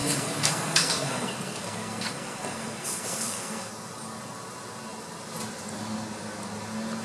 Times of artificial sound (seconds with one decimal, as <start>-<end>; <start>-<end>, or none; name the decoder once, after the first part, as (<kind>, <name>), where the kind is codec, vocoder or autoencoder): 0.0-3.7 (codec, SNAC)